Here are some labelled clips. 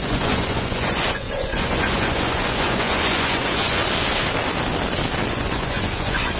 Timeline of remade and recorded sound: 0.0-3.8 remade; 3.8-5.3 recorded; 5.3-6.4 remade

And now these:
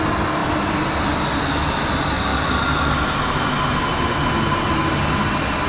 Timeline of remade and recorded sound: 0.0-5.7 recorded

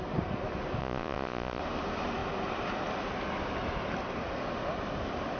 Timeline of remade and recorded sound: 0.0-0.8 recorded; 0.8-1.6 remade; 1.6-5.4 recorded

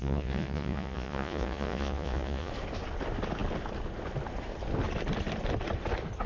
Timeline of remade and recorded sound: 0.0-2.5 remade; 2.5-6.3 recorded